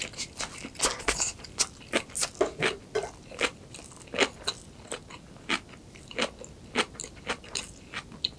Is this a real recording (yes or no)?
yes